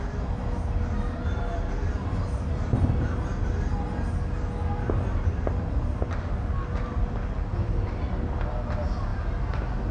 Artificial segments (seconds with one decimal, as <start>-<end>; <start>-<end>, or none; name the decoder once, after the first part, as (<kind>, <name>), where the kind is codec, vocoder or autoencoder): none